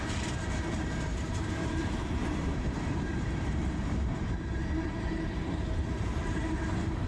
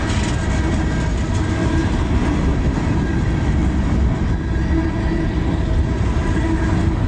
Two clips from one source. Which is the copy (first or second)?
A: first